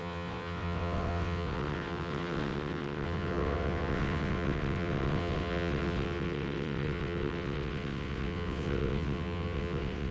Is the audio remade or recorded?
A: remade